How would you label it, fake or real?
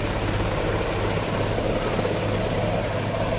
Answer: real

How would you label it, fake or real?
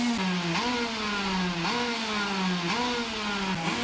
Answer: real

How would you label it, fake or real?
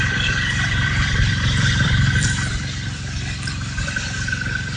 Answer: fake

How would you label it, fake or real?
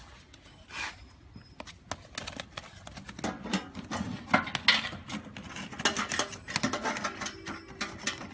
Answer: real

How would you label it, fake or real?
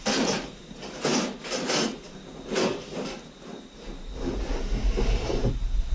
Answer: fake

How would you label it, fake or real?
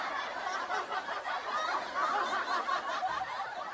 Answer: real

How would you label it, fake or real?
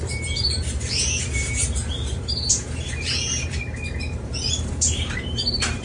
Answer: fake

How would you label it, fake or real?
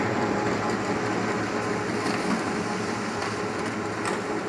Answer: fake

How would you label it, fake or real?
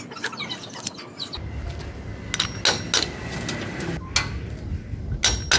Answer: real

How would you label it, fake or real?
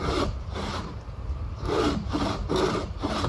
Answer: fake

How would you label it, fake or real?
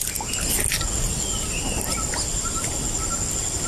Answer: real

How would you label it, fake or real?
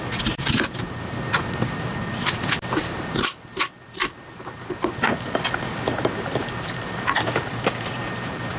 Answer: real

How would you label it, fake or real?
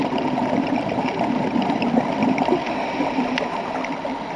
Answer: real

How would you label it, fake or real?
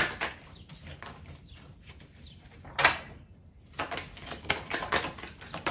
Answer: real